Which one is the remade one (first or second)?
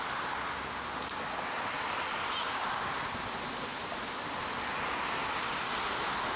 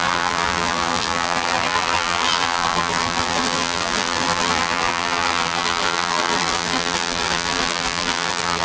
second